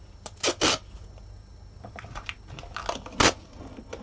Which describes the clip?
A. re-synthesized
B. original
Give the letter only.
B